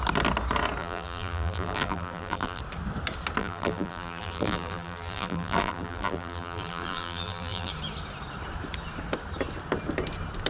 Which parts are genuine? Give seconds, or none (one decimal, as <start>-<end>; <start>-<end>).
0.0-0.8; 2.6-3.4; 7.7-10.5